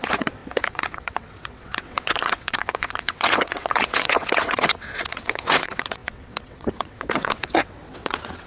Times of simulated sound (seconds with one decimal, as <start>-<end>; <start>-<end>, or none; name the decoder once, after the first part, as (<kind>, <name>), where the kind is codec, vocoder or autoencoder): 0.0-8.5 (vocoder, WaveNeXt)